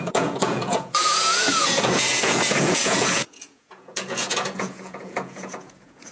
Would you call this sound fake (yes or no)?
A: yes